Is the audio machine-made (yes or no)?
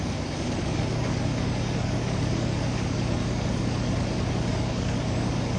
yes